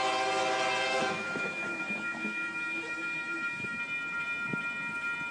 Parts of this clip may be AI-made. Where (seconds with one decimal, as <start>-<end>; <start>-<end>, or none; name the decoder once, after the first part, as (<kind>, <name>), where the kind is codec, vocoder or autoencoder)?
0.9-3.8 (autoencoder, DAC-VAE)